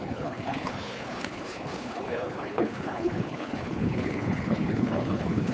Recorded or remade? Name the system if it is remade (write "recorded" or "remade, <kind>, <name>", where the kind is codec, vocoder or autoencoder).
remade, codec, HILCodec